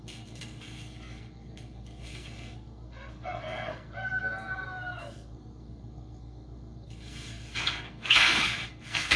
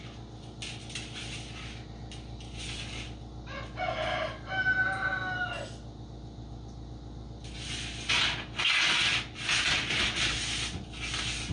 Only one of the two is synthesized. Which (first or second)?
first